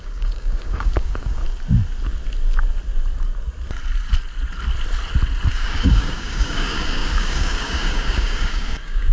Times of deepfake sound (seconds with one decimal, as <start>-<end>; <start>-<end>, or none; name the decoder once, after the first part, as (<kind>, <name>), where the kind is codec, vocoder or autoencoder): 0.0-1.4 (codec, DAC); 5.5-9.1